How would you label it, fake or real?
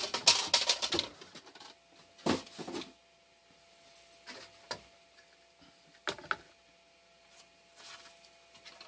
real